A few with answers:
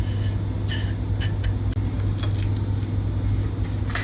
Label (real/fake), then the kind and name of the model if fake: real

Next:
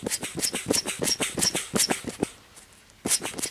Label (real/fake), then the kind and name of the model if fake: real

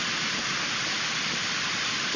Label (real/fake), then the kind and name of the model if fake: real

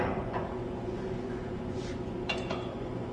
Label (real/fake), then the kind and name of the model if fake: fake, vocoder, Vocos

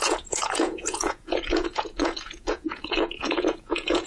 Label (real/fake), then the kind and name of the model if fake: fake, vocoder, Vocos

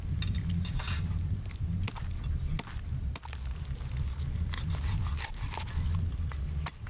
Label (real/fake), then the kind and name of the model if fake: real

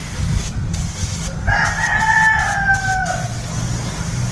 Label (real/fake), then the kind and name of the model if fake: real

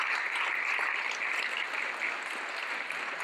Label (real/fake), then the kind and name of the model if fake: real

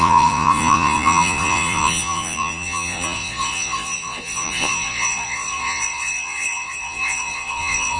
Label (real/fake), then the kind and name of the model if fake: fake, vocoder, Vocos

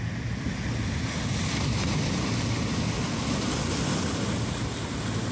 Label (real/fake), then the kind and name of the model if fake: real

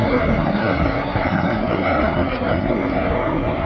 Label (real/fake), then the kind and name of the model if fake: fake, codec, SNAC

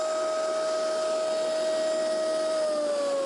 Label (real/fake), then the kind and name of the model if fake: real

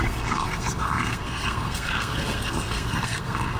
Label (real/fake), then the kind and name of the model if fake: fake, codec, SNAC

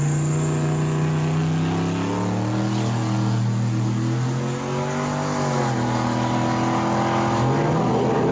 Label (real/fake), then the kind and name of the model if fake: real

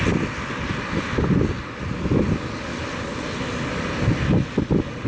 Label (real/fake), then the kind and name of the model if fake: real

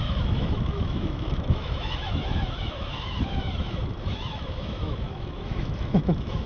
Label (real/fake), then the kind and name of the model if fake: fake, autoencoder, DAC-VAE